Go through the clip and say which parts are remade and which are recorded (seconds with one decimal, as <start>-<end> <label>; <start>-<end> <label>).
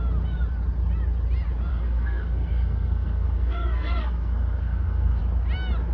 0.0-1.7 recorded; 1.7-5.2 remade; 5.2-5.9 recorded